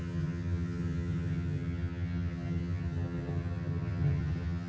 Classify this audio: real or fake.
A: fake